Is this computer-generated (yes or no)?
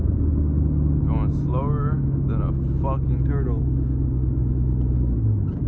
no